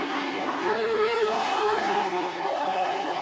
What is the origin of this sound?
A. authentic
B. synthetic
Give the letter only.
B